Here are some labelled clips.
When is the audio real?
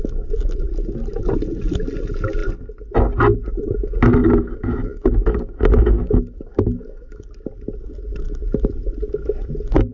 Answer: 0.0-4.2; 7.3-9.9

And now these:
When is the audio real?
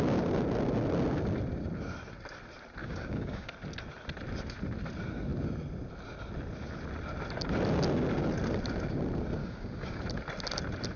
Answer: 0.0-2.8; 3.5-9.4; 10.0-11.0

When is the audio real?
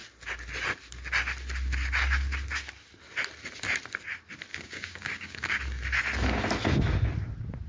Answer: 0.0-4.5; 5.6-7.7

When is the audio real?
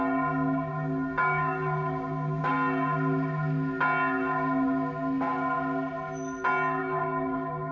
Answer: 0.0-0.7; 2.4-6.8